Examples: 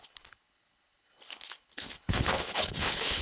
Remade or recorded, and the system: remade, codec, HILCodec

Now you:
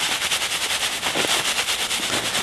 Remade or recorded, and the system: recorded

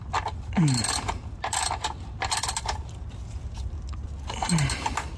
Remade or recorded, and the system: recorded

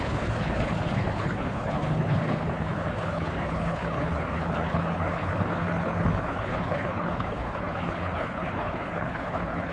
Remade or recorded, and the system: remade, codec, HILCodec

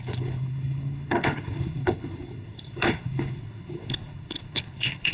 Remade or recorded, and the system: remade, codec, HILCodec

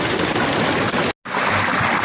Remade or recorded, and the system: recorded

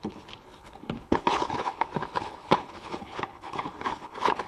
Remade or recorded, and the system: remade, codec, HILCodec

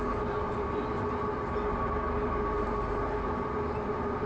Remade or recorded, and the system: recorded